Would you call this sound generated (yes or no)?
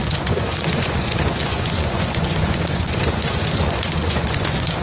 yes